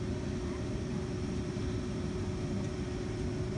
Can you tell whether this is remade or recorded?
remade